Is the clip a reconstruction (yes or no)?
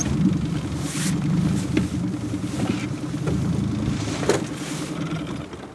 no